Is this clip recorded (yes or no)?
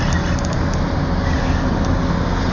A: yes